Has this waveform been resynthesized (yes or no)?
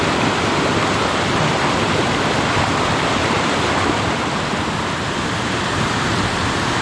yes